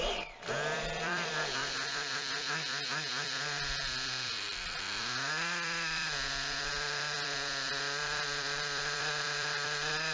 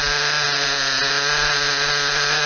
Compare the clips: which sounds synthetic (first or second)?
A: first